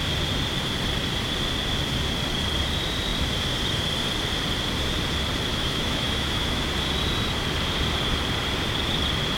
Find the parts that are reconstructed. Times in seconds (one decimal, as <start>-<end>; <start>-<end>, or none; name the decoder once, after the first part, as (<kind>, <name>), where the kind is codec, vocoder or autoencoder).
5.5-6.6 (autoencoder, DAC-VAE)